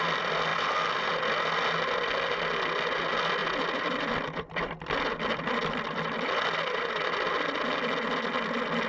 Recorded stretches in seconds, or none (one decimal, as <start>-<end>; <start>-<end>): 0.0-8.9